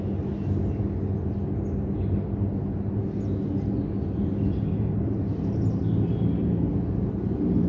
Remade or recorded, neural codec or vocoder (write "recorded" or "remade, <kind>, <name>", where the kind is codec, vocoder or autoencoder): recorded